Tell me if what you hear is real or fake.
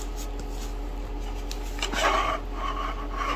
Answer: real